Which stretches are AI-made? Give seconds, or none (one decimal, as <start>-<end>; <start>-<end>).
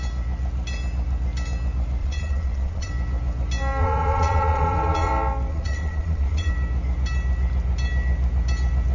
2.0-2.9; 3.8-5.1; 5.5-6.5